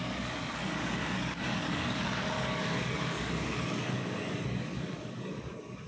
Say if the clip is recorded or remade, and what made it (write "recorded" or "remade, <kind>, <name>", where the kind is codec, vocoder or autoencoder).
remade, codec, DAC